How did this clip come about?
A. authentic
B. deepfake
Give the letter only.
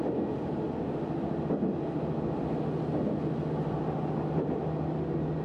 A